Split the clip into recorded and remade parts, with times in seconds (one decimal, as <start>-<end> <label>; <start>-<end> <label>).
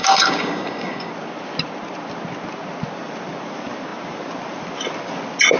0.0-1.1 remade; 1.1-5.6 recorded